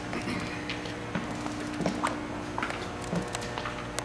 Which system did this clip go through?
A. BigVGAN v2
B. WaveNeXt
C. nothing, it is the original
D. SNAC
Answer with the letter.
C